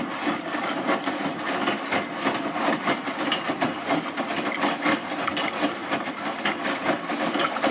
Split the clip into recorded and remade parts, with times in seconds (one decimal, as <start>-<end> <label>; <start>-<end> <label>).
0.0-7.7 recorded